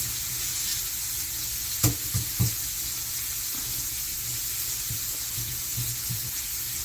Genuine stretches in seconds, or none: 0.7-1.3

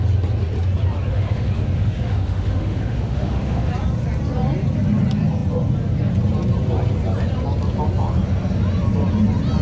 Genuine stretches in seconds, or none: 0.0-1.1; 3.7-9.6

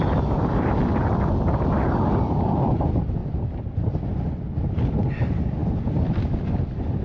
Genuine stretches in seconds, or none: 0.0-7.0

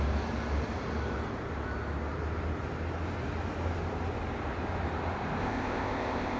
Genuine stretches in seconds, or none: 0.0-5.4

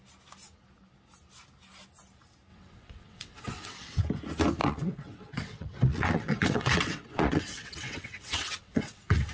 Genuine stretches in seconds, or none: 0.0-2.5; 4.0-4.6